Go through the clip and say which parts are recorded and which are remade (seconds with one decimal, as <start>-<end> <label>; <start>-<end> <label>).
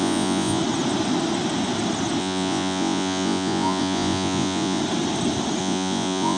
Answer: 0.0-0.6 remade; 0.6-2.2 recorded; 2.2-4.8 remade; 4.8-5.6 recorded; 5.6-6.4 remade